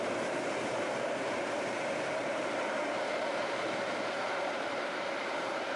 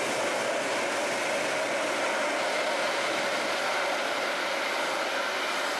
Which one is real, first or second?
second